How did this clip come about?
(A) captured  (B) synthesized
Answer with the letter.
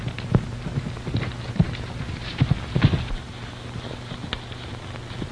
A